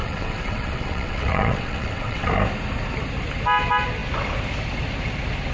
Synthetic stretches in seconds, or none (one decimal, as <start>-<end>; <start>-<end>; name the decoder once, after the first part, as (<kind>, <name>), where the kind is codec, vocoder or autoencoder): 0.0-2.3 (vocoder, WaveNeXt)